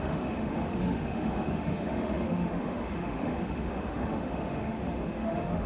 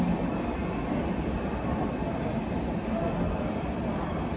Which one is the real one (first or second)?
second